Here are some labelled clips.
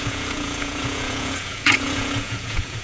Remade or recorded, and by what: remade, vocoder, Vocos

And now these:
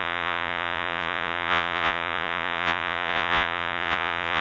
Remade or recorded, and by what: remade, vocoder, Vocos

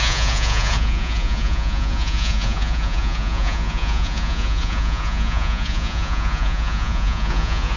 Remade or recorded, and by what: remade, vocoder, Vocos